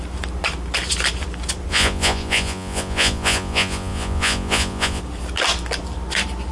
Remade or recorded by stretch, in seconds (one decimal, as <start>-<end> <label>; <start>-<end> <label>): 0.0-1.7 recorded; 1.7-5.0 remade; 5.0-6.5 recorded

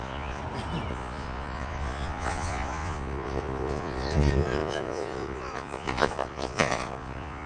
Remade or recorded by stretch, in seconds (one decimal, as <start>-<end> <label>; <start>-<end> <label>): 0.0-0.4 remade; 0.4-0.9 recorded; 0.9-7.5 remade

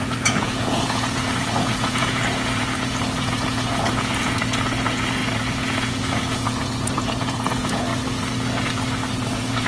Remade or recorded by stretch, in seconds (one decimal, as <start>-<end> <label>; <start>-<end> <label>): 0.0-7.9 remade; 7.9-9.2 recorded; 9.2-9.7 remade

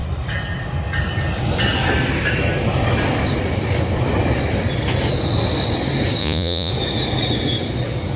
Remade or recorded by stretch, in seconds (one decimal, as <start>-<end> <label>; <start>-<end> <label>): 0.0-6.2 recorded; 6.2-6.7 remade; 6.7-8.2 recorded

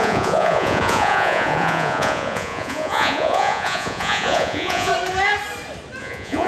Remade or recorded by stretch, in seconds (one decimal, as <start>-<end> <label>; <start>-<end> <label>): 0.0-4.9 remade; 4.9-6.0 recorded; 6.0-6.5 remade

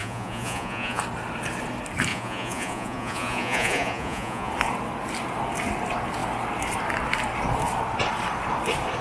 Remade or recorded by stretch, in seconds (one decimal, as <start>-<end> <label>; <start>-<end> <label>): 0.0-1.0 remade; 1.0-2.1 recorded; 2.1-4.5 remade; 4.5-9.0 recorded

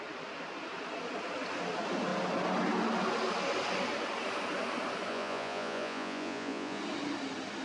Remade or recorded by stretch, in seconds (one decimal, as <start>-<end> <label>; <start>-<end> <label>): 0.0-5.1 recorded; 5.1-6.8 remade; 6.8-7.6 recorded

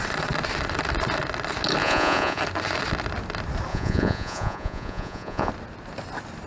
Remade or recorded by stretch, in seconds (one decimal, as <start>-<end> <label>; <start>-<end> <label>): 0.0-1.8 recorded; 1.8-2.4 remade; 2.4-3.7 recorded; 3.7-5.5 remade; 5.5-6.5 recorded